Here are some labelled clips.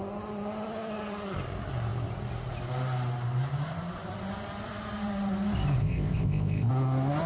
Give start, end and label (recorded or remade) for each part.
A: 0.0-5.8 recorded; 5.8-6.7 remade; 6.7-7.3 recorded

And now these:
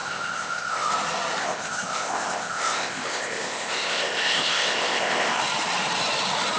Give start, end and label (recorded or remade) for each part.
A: 0.0-0.9 remade; 0.9-1.4 recorded; 1.4-5.4 remade; 5.4-6.6 recorded

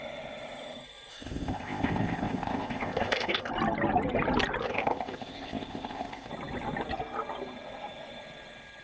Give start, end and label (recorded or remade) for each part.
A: 0.0-1.1 recorded; 1.1-3.5 remade; 3.5-4.6 recorded; 4.6-6.3 remade; 6.3-8.8 recorded

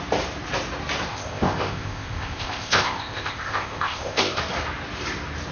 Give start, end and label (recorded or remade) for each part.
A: 0.0-1.1 recorded; 1.1-4.4 remade; 4.4-5.5 recorded